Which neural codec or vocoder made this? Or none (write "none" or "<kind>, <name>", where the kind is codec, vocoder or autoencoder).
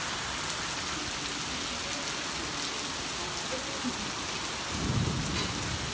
none